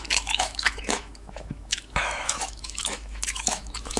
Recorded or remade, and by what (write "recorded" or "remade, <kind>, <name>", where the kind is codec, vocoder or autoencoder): remade, autoencoder, DAC-VAE